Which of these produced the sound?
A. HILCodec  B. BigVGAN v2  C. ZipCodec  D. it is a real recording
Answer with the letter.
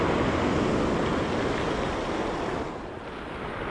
D